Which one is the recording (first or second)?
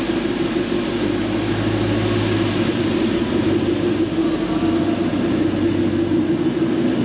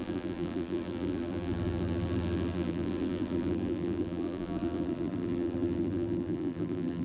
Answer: first